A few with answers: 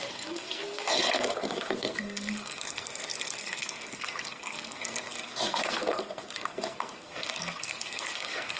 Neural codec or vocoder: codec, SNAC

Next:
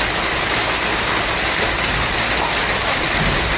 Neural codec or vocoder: none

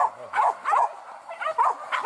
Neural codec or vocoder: none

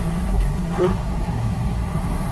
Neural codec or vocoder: codec, SNAC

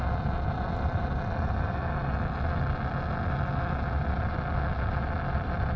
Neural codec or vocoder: none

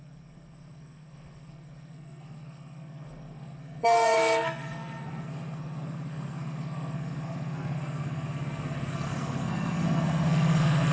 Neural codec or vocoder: codec, SNAC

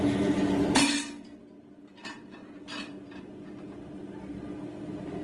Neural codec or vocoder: none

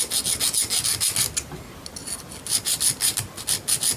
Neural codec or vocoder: none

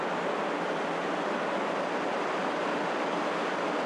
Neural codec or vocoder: none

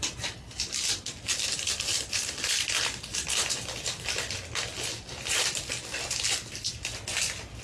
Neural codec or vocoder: none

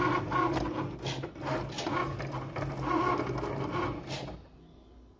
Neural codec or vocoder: none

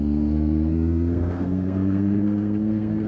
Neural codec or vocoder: codec, SNAC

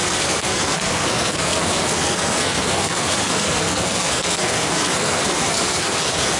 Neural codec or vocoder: codec, SNAC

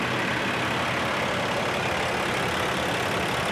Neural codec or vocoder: none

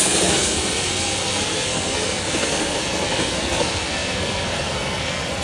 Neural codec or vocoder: codec, SNAC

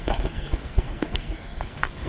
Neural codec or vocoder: codec, SNAC